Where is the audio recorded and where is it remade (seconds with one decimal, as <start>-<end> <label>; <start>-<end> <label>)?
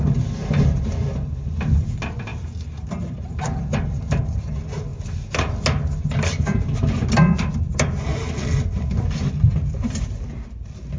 0.0-11.0 recorded